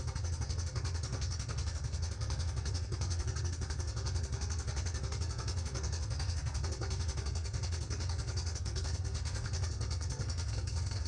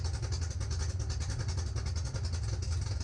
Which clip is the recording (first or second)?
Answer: second